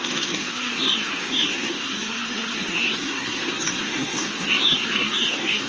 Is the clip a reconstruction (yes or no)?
yes